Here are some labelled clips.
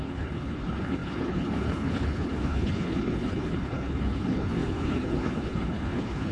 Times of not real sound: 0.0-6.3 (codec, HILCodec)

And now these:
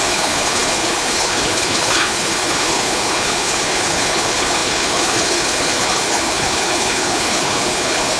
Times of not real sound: 0.0-8.2 (codec, HILCodec)